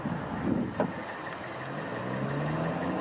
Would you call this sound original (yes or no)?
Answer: yes